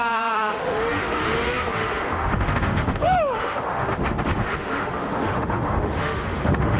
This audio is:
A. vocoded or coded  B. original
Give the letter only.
A